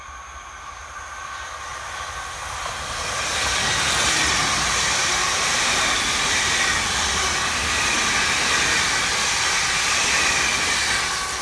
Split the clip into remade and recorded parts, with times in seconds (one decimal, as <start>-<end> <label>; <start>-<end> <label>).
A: 0.0-5.3 recorded; 5.3-6.4 remade; 6.4-11.4 recorded